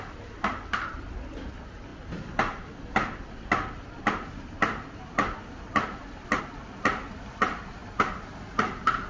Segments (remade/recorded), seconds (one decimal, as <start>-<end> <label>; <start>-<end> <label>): 0.0-9.1 recorded